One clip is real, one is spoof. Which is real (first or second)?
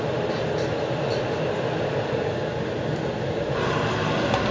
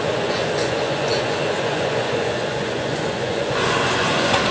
first